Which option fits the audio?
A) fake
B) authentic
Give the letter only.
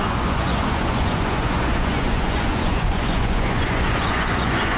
A